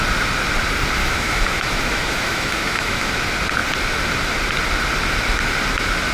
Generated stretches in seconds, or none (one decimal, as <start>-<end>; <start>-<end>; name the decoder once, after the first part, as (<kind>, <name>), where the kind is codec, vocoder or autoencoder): 1.0-3.1 (autoencoder, DAC-VAE)